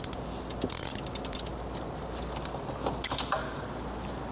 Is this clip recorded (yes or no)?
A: yes